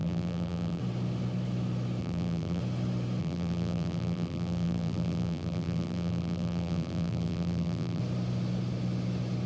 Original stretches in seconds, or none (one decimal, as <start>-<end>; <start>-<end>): 0.8-2.0; 2.6-3.2; 8.0-9.5